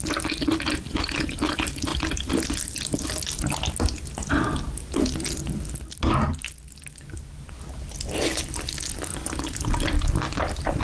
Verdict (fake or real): real